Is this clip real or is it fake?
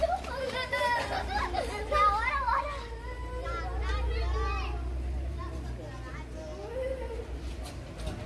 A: real